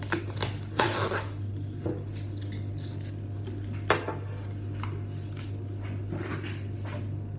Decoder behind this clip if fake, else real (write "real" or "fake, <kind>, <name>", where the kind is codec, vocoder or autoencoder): real